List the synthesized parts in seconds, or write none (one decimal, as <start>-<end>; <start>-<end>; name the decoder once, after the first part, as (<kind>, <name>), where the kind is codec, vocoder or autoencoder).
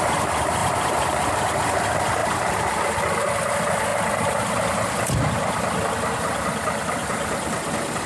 0.6-1.3 (vocoder, BigVGAN v2); 2.2-2.8